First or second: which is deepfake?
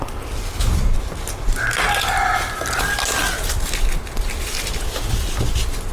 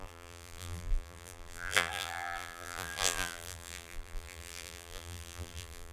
second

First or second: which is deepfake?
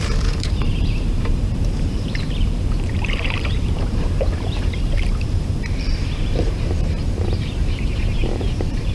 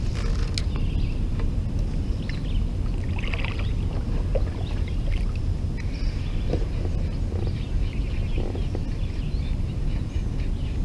first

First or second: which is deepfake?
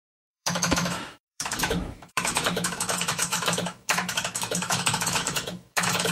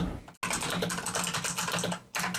first